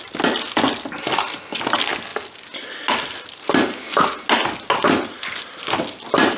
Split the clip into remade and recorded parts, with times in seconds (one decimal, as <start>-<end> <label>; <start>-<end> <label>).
0.0-6.4 recorded